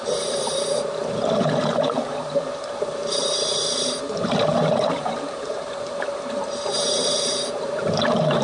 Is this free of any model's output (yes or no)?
no